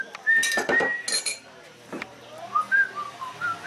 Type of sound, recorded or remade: recorded